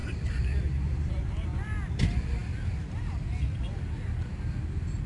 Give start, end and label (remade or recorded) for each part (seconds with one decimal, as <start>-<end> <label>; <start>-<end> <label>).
0.0-2.0 remade; 2.0-2.4 recorded; 2.4-4.3 remade; 4.3-5.1 recorded